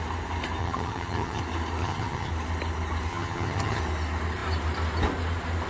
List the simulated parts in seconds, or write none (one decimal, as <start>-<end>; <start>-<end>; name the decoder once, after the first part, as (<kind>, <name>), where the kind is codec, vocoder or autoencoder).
0.6-1.4 (vocoder, HiFi-GAN); 1.8-2.3; 3.1-3.8